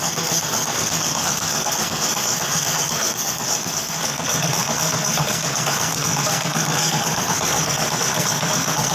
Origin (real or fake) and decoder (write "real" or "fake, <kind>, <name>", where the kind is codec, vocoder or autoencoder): fake, codec, SNAC